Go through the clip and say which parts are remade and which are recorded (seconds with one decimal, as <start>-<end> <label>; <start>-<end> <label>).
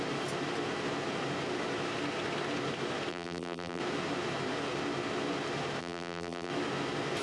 0.0-3.1 recorded; 3.1-3.8 remade; 3.8-5.8 recorded; 5.8-6.5 remade; 6.5-7.2 recorded